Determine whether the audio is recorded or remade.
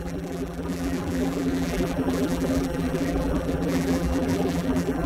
remade